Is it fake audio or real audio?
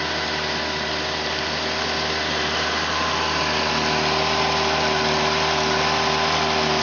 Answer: real